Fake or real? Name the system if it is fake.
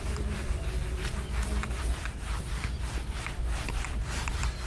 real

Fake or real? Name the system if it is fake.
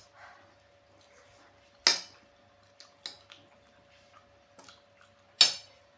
real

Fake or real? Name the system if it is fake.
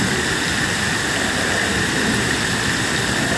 real